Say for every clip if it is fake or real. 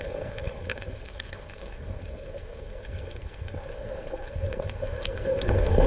fake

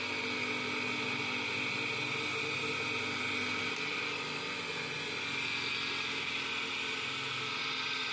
real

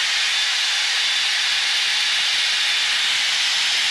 real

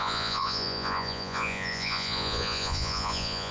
fake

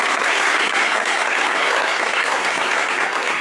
fake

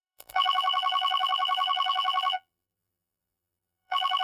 fake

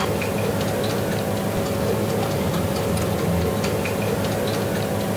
real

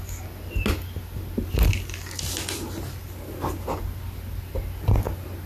real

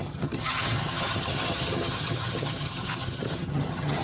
fake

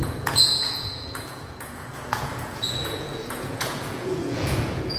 fake